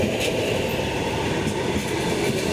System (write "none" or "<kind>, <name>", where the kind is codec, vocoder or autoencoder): none